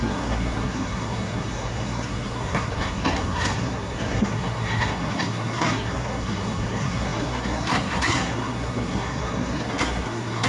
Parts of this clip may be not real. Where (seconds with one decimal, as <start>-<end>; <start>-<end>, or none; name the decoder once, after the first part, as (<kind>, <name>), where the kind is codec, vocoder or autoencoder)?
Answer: 0.0-10.5 (codec, SNAC)